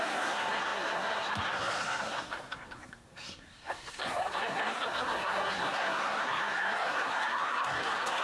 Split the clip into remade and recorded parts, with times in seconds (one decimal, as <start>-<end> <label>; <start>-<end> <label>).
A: 0.0-8.2 remade